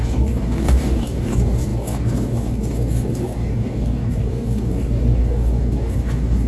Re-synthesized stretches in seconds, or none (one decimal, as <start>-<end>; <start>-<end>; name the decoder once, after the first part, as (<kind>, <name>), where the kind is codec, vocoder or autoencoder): 0.0-6.5 (codec, DAC)